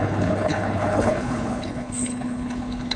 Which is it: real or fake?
fake